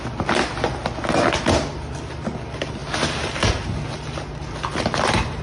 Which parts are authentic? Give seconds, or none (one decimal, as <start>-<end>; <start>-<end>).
0.0-5.4